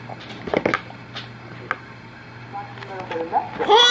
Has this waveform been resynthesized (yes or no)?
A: no